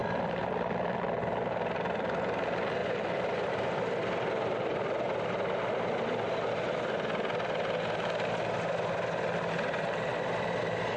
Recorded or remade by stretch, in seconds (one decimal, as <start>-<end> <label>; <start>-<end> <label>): 0.0-0.5 remade; 0.5-2.8 recorded; 2.8-6.7 remade; 6.7-10.1 recorded; 10.1-10.6 remade; 10.6-11.0 recorded